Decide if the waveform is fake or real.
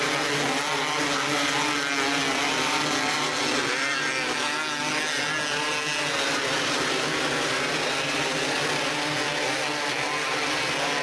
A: real